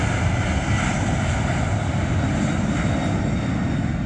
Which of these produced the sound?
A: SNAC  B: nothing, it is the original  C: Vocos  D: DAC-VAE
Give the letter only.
B